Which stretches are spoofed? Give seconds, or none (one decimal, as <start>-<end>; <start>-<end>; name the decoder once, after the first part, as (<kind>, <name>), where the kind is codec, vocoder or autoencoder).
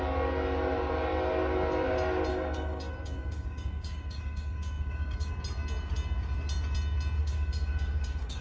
2.3-5.3 (codec, DAC); 7.2-8.4